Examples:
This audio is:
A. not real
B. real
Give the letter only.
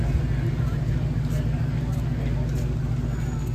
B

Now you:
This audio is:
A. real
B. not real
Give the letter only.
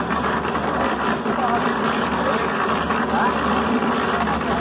A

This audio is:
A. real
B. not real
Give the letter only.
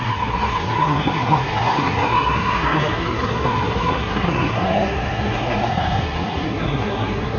B